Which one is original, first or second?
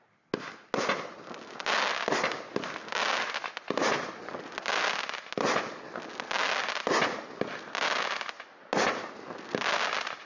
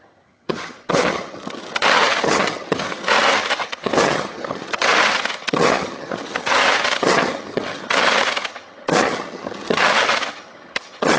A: first